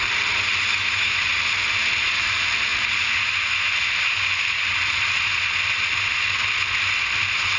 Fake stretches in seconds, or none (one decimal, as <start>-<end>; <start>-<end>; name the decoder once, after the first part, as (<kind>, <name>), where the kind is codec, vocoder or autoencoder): 0.7-1.2 (autoencoder, DAC-VAE)